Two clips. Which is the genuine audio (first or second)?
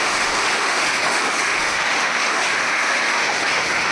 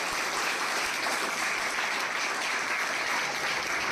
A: second